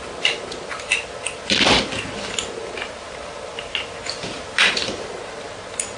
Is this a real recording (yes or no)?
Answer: yes